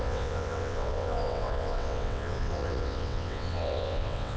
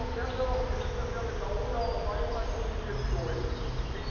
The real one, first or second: second